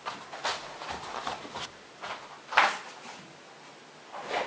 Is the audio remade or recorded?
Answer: recorded